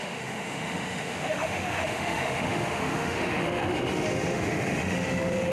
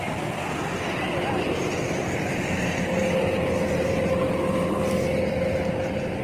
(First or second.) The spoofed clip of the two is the first